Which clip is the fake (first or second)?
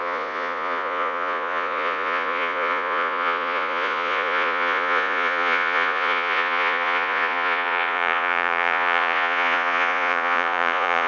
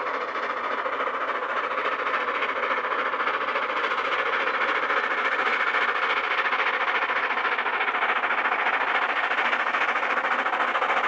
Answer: first